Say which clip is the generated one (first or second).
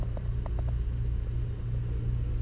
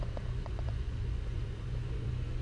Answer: second